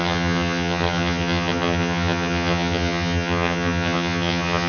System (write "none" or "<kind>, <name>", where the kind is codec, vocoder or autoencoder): vocoder, HiFi-GAN